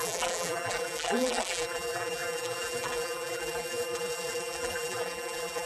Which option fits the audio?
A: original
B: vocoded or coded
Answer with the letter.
B